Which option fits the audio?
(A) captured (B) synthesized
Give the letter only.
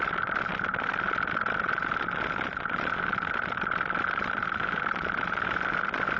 A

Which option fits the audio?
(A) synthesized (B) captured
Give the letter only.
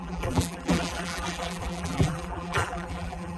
A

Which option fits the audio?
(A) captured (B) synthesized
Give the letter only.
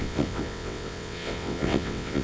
B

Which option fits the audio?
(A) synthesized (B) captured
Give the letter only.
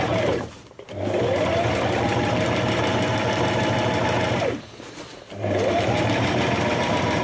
A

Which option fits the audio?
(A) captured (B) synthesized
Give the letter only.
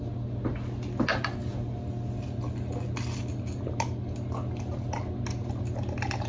A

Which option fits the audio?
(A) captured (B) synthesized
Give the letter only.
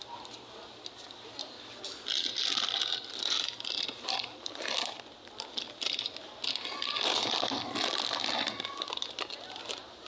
A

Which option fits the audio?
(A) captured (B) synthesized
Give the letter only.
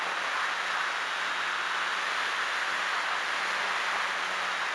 A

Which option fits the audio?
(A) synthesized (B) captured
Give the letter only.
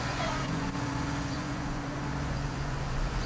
A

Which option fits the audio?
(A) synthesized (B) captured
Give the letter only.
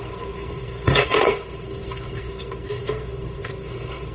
A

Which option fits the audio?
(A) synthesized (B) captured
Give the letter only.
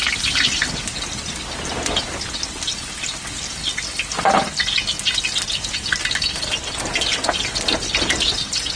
B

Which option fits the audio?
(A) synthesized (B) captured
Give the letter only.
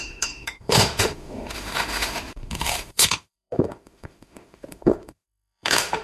A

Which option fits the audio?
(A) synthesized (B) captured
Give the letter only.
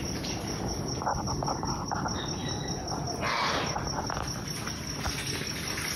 B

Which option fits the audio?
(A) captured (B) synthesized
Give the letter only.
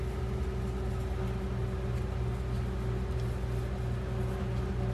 A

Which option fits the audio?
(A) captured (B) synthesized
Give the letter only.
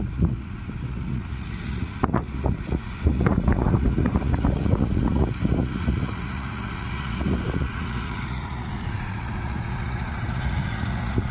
B